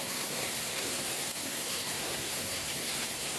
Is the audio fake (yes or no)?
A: yes